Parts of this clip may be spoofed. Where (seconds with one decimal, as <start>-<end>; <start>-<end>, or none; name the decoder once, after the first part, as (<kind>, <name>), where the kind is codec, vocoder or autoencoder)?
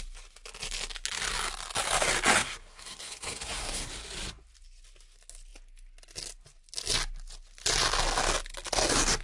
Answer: 2.4-3.9 (codec, SNAC)